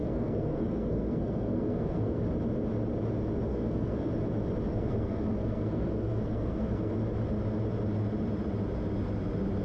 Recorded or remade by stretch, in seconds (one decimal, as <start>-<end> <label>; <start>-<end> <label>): 0.0-2.2 remade; 2.2-3.5 recorded; 3.5-4.1 remade; 4.1-4.7 recorded; 4.7-6.9 remade; 6.9-9.6 recorded